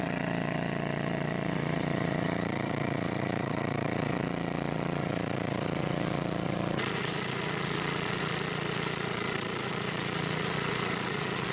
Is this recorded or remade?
remade